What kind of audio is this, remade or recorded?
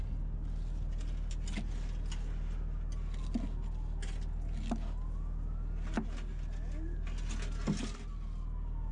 recorded